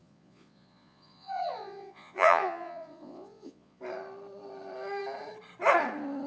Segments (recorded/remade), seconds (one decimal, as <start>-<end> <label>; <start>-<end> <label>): 0.0-3.8 remade; 3.8-6.3 recorded